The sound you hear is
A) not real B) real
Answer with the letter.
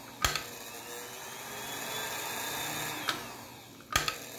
B